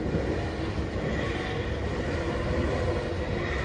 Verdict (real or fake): real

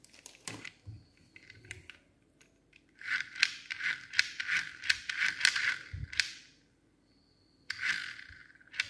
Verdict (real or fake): fake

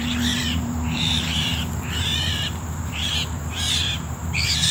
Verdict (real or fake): fake